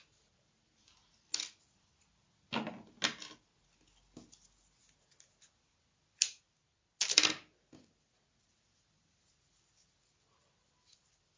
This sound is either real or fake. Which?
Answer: real